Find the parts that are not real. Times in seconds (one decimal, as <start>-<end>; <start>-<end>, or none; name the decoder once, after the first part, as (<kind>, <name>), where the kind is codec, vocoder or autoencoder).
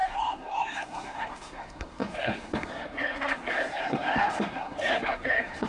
0.0-5.7 (codec, SNAC)